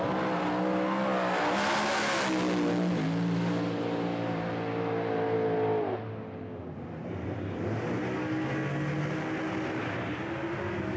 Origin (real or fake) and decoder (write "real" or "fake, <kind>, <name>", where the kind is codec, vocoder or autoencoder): real